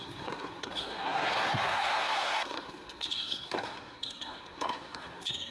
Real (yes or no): no